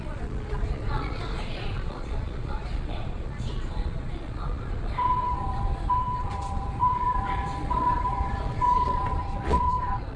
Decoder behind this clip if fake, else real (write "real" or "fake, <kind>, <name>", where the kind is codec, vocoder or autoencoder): fake, vocoder, Vocos